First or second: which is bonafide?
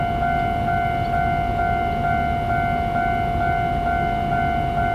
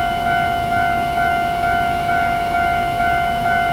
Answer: first